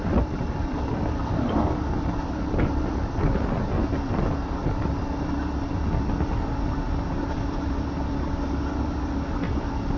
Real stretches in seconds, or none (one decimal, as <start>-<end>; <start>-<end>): 0.0-10.0